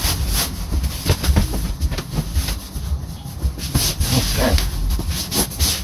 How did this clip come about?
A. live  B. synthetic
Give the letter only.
A